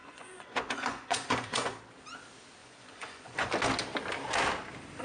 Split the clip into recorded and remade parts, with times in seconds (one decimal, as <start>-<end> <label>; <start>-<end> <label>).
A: 0.0-1.8 remade; 1.8-2.6 recorded; 2.6-3.5 remade; 3.5-5.0 recorded